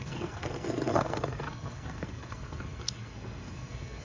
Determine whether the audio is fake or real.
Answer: fake